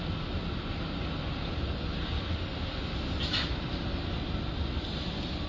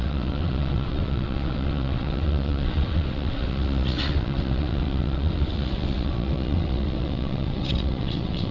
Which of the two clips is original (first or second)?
first